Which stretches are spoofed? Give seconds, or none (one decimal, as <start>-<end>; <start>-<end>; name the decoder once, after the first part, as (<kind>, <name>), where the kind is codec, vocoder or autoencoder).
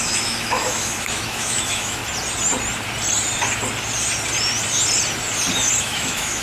0.0-2.0 (autoencoder, DAC-VAE); 5.8-6.4